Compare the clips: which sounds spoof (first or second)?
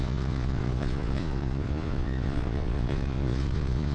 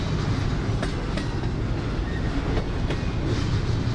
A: first